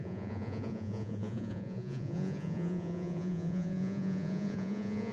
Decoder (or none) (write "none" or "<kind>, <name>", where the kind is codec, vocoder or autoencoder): vocoder, Vocos